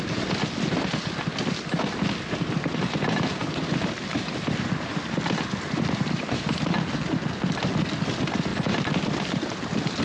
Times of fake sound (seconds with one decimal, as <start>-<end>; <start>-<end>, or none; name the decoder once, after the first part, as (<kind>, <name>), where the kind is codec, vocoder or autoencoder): 8.5-10.0 (vocoder, BigVGAN v2)